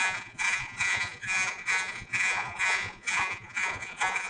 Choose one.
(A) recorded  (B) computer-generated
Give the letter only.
B